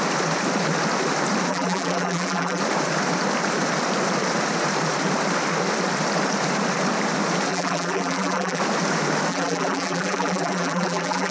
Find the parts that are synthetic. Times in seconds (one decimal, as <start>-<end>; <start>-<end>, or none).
1.5-2.6; 7.5-8.6; 9.3-11.3

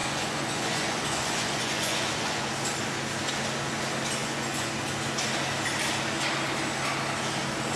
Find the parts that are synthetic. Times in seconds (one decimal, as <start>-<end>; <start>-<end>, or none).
0.0-2.5; 4.2-4.7

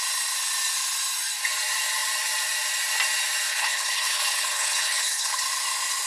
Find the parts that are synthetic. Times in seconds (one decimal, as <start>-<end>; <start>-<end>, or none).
3.5-5.4

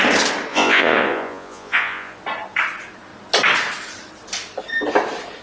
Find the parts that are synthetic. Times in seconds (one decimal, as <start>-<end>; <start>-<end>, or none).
0.5-2.2

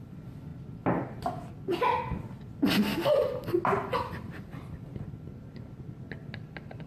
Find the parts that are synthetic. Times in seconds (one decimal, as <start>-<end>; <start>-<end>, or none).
none

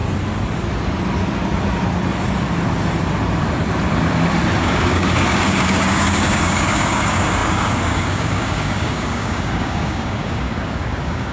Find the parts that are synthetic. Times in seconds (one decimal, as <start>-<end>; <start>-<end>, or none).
4.6-11.3